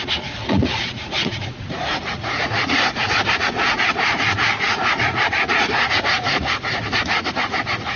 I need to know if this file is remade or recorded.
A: remade